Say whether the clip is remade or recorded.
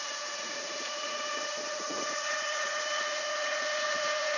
remade